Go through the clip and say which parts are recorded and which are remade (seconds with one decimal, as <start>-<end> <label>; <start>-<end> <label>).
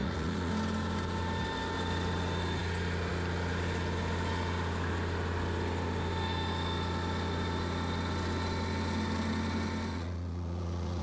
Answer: 0.0-0.5 remade; 0.5-9.9 recorded; 9.9-11.0 remade